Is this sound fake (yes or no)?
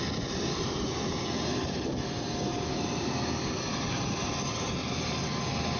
no